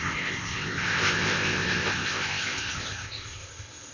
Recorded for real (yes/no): no